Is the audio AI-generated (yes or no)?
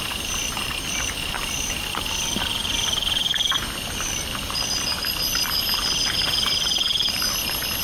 yes